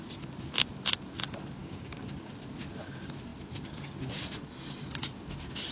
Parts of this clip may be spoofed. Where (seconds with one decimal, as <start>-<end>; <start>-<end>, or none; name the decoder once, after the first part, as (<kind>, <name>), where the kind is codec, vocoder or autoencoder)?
1.6-2.3 (codec, DAC)